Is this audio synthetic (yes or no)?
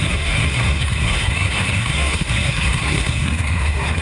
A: yes